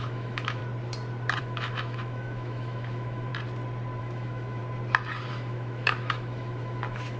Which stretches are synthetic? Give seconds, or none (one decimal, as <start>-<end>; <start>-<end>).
0.0-0.6; 1.4-3.3; 4.0-4.6; 5.3-7.2